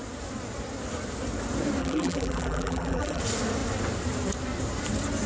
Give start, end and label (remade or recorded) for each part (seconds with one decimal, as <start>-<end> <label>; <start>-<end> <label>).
0.0-1.8 recorded; 1.8-3.2 remade; 3.2-5.3 recorded